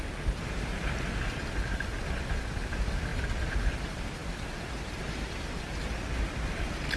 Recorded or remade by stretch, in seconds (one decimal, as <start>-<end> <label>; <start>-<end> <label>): 0.0-7.0 recorded